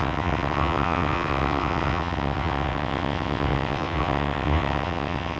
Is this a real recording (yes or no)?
no